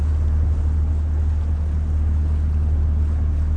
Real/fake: real